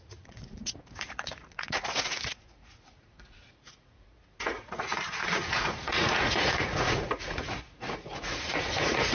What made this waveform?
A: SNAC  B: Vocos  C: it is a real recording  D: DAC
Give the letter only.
B